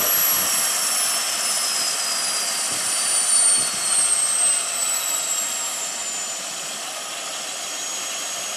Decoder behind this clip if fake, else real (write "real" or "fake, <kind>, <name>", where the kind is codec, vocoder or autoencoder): real